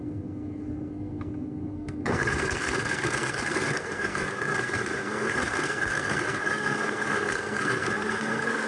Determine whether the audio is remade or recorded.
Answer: remade